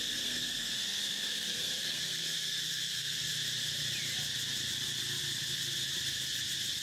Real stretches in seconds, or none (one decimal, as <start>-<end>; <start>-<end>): 3.3-6.8